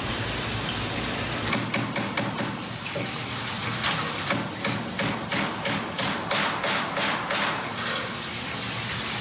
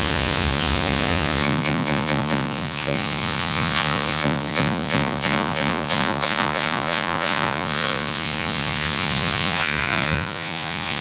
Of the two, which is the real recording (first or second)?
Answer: first